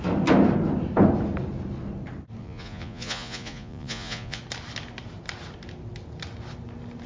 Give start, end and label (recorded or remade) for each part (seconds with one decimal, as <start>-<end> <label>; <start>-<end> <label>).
0.0-2.4 recorded; 2.4-4.4 remade; 4.4-7.1 recorded